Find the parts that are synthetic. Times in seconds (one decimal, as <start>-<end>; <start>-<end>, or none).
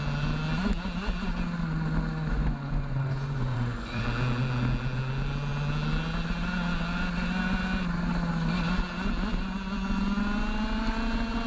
2.3-4.0